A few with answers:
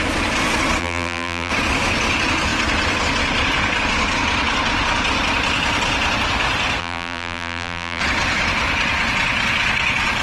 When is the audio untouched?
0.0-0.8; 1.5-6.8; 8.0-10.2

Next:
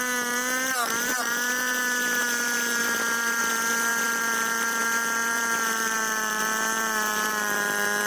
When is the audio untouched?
0.0-2.8; 3.4-3.9; 6.4-8.1